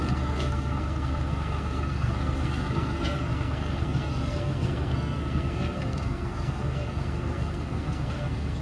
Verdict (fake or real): fake